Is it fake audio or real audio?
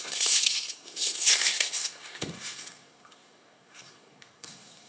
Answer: fake